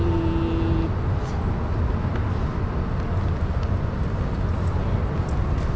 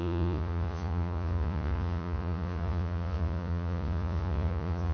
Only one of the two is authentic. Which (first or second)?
first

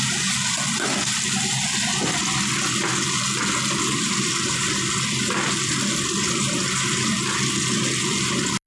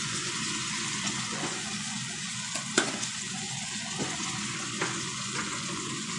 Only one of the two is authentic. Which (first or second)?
first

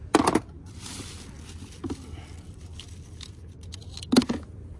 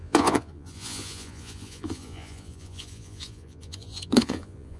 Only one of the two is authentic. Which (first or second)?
first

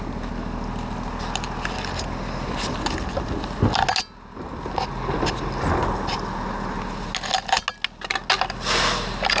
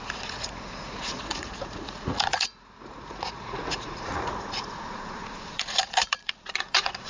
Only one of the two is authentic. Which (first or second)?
first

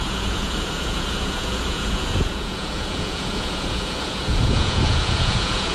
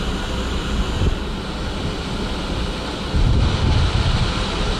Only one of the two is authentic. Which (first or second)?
second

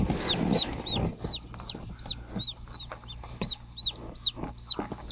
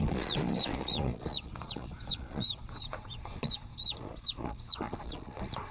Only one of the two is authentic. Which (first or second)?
first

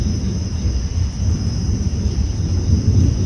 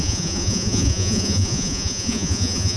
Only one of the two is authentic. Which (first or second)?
first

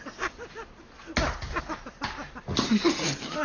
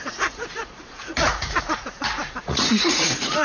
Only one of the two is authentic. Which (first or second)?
first